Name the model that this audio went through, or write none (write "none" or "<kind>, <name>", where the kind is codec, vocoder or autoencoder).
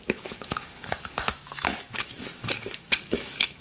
autoencoder, DAC-VAE